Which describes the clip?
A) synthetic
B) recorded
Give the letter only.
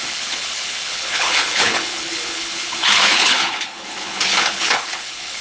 A